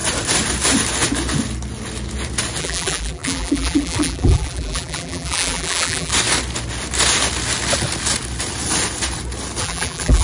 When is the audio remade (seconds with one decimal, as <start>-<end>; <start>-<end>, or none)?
2.6-6.1; 9.6-10.2